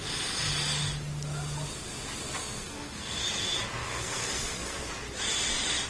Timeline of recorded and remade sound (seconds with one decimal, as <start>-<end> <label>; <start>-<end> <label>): 0.0-2.4 recorded; 2.4-3.2 remade; 3.2-3.8 recorded; 3.8-4.9 remade; 4.9-5.9 recorded

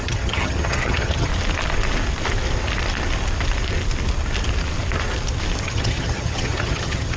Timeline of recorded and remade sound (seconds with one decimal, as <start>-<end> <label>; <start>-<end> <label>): 0.0-1.3 remade; 1.3-5.6 recorded; 5.6-7.2 remade

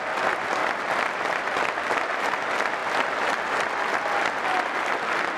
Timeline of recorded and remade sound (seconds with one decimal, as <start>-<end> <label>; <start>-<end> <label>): 0.0-5.4 recorded

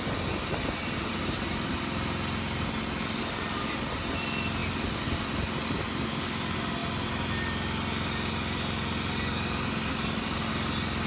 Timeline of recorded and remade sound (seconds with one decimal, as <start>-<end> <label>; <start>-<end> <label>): 0.0-11.1 recorded